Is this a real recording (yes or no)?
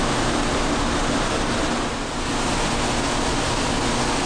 yes